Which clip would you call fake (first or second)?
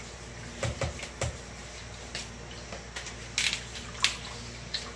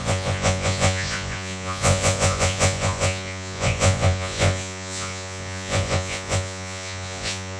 second